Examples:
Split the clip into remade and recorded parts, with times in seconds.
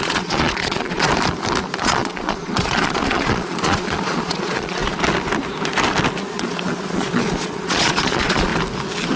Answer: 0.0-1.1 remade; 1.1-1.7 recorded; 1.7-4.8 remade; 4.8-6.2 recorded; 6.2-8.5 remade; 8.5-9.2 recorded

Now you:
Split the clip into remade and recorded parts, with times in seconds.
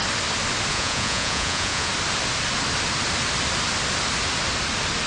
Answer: 0.0-0.7 recorded; 0.7-1.9 remade; 1.9-5.1 recorded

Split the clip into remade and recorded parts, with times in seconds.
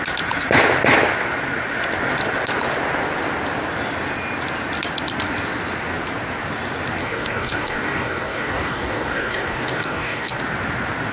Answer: 0.0-7.0 recorded; 7.0-10.4 remade; 10.4-11.1 recorded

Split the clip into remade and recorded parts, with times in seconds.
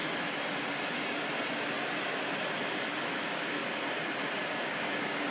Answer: 0.0-3.2 recorded; 3.2-3.6 remade; 3.6-4.5 recorded; 4.5-5.3 remade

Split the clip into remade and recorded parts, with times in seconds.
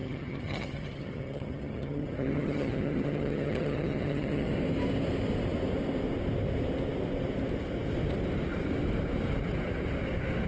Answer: 0.0-4.5 remade; 4.5-10.5 recorded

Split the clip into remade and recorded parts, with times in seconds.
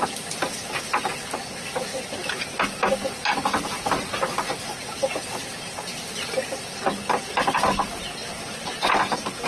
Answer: 0.0-9.5 recorded